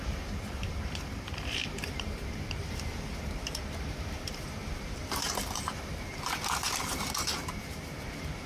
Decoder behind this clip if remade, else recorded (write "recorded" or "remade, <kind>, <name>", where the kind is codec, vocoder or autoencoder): remade, vocoder, BigVGAN v2